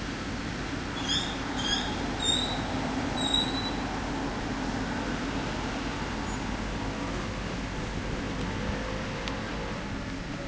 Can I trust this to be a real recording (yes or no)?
yes